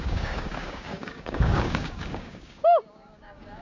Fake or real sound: fake